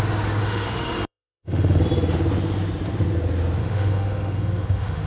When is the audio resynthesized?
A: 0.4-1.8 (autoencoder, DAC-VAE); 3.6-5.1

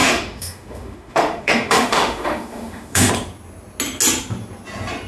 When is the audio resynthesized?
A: 0.0-3.1 (autoencoder, DAC-VAE)

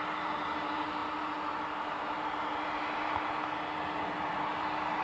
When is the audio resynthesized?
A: none

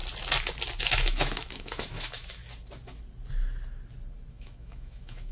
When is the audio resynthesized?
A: 0.8-2.4 (autoencoder, DAC-VAE); 4.3-5.3

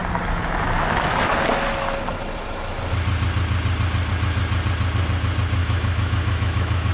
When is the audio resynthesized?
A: 5.6-6.9 (autoencoder, DAC-VAE)

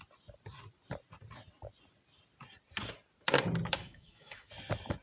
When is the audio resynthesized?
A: 3.8-4.5 (autoencoder, DAC-VAE)

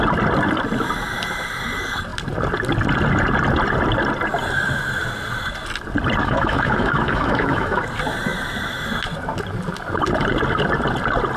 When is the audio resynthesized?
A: 6.2-7.8 (autoencoder, DAC-VAE)

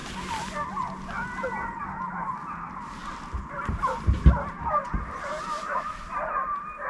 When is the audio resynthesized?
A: none